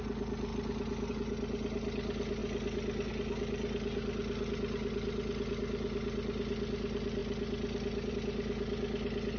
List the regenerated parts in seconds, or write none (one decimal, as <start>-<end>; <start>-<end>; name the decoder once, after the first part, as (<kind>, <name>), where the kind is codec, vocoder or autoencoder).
none